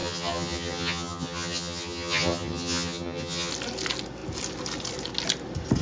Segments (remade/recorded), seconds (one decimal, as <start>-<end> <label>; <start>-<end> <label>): 0.0-3.5 remade; 3.5-5.8 recorded